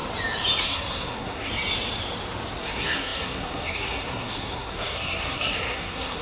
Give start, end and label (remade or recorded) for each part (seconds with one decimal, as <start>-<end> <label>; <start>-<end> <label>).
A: 0.0-0.6 recorded; 0.6-1.5 remade; 1.5-2.6 recorded; 2.6-6.2 remade